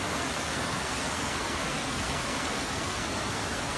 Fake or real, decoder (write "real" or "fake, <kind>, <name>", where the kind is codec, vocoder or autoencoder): fake, codec, SNAC